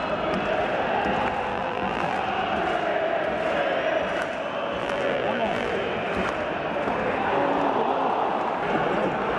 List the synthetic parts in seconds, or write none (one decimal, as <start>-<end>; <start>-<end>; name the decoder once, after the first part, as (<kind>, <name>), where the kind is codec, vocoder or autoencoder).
1.5-2.2 (vocoder, BigVGAN v2); 4.8-5.7